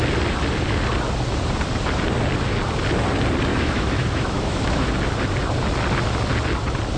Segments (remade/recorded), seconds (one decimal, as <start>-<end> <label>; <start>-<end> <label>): 0.0-3.5 recorded; 3.5-4.9 remade; 4.9-7.0 recorded